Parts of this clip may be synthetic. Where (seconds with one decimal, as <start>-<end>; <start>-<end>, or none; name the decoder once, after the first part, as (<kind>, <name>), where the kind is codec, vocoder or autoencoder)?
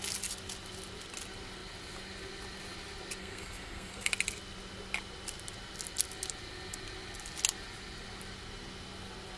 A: 3.2-4.1 (codec, SNAC)